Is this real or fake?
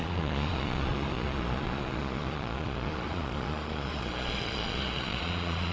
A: fake